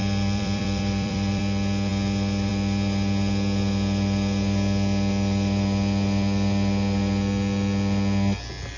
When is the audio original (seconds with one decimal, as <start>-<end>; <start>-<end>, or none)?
1.4-8.8

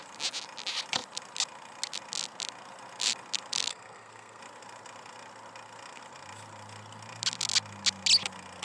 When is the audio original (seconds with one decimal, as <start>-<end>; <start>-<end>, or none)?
0.0-3.7; 4.4-8.6

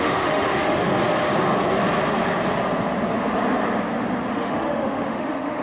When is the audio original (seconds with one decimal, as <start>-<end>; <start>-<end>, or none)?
0.9-4.3

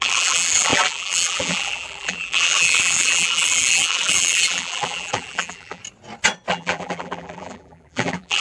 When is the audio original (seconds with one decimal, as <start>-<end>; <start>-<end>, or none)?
5.8-6.5

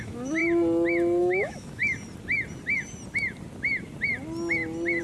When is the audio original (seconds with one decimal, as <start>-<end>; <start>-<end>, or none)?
0.4-1.2; 1.8-5.0

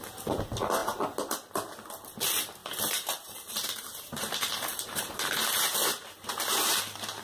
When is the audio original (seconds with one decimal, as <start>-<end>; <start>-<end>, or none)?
0.0-2.6; 6.4-7.2